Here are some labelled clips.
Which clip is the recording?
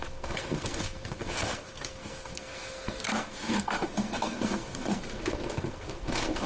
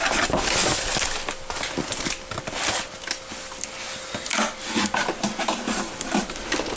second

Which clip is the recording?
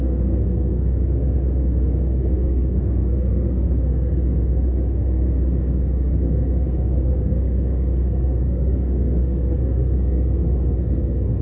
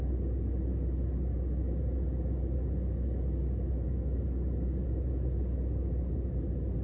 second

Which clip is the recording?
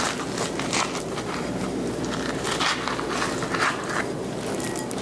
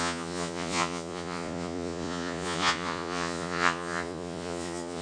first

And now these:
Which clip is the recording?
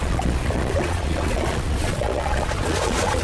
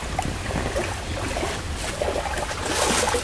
second